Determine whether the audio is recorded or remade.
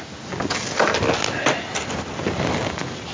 recorded